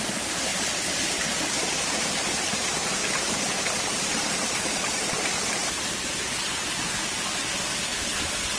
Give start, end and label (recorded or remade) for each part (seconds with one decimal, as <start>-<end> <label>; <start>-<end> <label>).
0.0-5.6 remade; 5.6-6.5 recorded; 6.5-8.6 remade